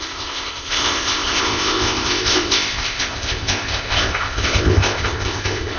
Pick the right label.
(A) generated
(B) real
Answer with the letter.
A